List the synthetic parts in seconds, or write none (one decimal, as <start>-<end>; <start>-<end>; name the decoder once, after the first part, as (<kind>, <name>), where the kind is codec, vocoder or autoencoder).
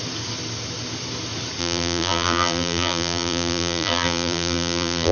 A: 1.6-5.1 (vocoder, BigVGAN v2)